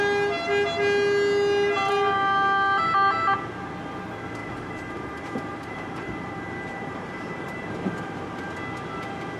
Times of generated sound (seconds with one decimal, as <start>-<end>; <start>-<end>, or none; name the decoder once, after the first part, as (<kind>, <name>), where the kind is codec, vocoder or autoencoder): 4.4-8.4 (vocoder, BigVGAN v2)